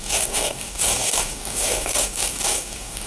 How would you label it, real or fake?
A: fake